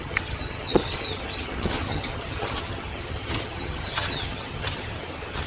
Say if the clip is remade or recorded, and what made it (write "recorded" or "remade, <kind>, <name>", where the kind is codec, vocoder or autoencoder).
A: remade, vocoder, HiFi-GAN